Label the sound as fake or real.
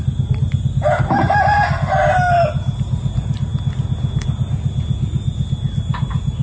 real